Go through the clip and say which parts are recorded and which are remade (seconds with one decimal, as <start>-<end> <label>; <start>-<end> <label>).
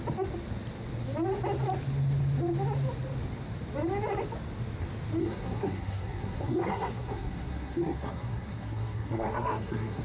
0.0-5.2 recorded; 5.2-10.0 remade